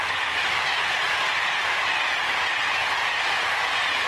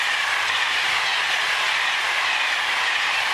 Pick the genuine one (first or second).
second